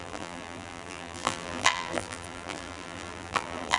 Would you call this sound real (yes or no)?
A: no